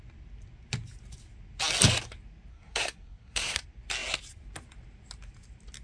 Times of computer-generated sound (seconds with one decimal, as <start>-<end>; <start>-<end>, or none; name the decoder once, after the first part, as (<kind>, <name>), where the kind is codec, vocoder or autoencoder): 2.5-3.6 (codec, SNAC)